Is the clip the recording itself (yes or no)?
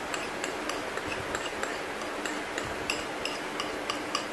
yes